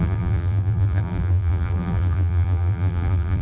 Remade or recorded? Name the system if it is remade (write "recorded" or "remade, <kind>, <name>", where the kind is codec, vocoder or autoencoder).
remade, vocoder, BigVGAN v2